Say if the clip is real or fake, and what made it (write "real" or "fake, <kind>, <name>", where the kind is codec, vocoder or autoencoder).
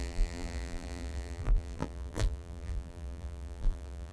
fake, vocoder, BigVGAN v2